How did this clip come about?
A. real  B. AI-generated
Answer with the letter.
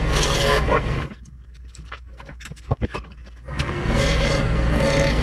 B